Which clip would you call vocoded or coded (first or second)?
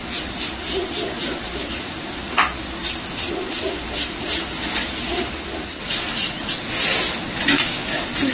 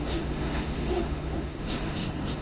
second